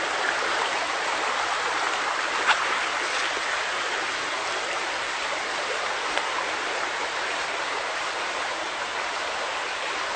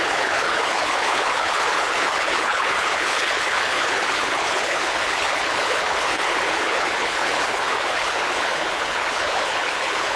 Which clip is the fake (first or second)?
second